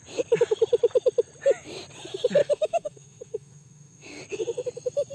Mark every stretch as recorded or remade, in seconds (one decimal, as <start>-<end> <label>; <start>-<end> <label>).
0.0-2.4 recorded; 2.4-4.2 remade; 4.2-5.1 recorded